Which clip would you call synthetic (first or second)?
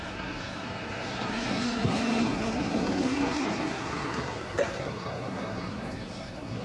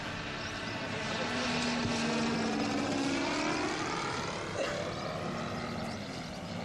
first